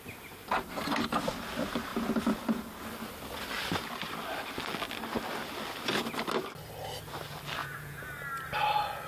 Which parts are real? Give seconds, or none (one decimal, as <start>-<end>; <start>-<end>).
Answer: 0.0-7.6; 8.1-9.1